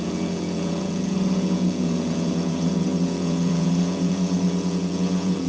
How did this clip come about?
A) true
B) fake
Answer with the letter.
B